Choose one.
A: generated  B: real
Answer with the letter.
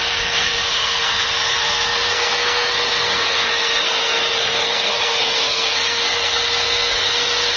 A